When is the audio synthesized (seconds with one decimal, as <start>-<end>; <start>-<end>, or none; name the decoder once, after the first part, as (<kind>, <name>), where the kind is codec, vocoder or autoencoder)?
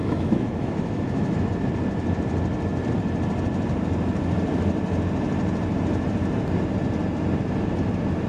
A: 0.0-1.5 (autoencoder, DAC-VAE)